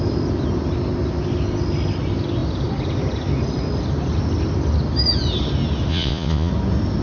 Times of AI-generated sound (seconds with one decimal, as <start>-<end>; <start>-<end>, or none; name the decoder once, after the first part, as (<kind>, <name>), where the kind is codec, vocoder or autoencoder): 5.9-6.5 (vocoder, Vocos)